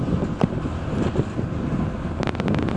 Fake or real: real